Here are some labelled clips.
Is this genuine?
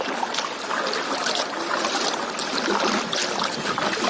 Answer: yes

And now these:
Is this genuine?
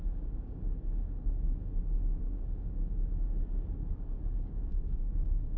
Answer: no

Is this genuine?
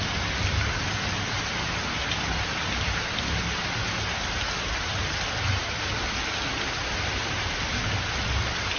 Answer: yes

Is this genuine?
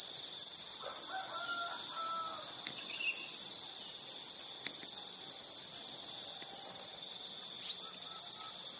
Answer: yes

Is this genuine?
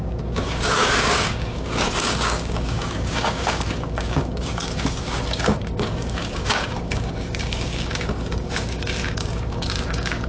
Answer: no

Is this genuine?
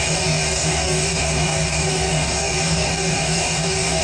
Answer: no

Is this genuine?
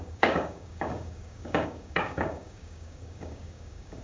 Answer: no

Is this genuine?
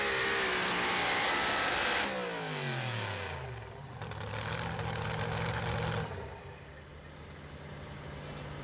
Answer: yes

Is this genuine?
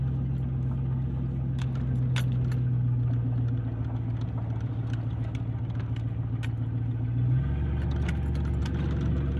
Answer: yes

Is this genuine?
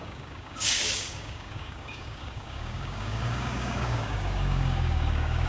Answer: no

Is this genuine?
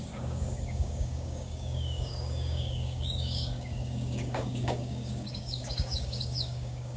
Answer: no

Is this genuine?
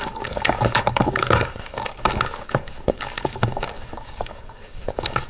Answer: no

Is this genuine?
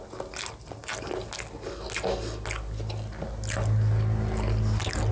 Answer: yes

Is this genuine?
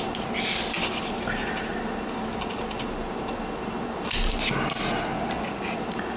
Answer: yes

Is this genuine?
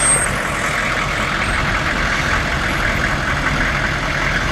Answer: yes